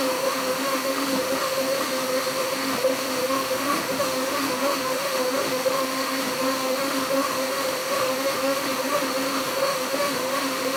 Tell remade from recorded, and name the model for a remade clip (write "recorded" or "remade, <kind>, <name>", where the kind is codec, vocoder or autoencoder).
remade, autoencoder, DAC-VAE